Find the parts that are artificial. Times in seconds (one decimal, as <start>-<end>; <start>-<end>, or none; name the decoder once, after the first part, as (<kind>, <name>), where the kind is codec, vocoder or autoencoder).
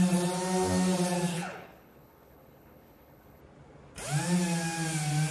1.3-3.4 (codec, HILCodec)